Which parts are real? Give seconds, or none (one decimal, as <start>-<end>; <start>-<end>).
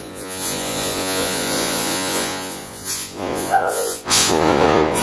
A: none